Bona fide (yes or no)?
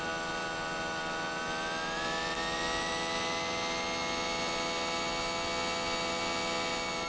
yes